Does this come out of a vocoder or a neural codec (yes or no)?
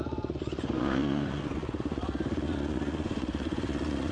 yes